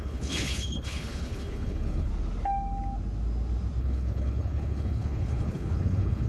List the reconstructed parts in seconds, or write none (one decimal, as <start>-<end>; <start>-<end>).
0.0-2.1; 3.8-6.3